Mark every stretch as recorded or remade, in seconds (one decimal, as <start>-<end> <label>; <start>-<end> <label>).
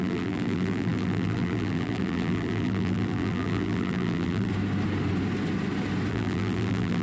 0.0-4.5 remade; 4.5-6.1 recorded; 6.1-7.0 remade